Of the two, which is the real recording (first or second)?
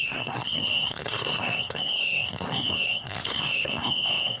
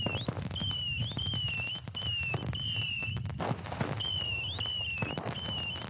second